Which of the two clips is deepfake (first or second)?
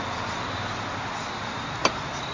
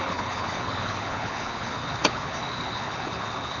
second